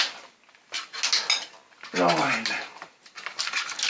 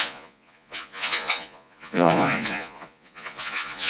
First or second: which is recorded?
first